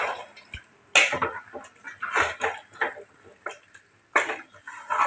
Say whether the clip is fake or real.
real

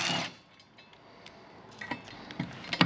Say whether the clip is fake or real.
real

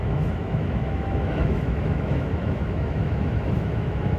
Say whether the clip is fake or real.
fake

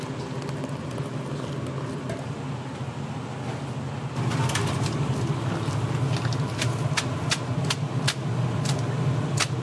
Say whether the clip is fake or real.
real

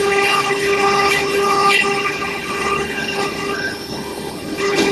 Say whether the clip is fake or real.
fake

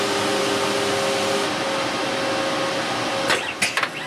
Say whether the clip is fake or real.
real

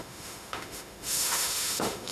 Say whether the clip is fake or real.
fake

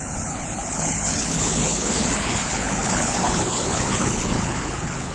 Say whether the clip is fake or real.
fake